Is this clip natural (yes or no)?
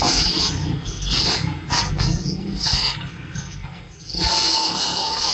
no